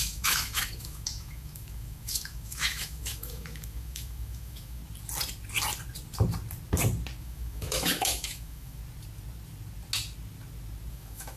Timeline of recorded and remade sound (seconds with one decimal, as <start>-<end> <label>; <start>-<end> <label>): 0.0-4.8 remade; 4.8-7.2 recorded; 7.2-8.8 remade; 8.8-10.9 recorded; 10.9-11.4 remade